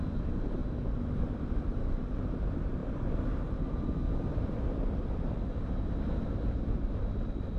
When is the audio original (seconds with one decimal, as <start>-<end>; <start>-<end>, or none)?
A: 0.6-1.3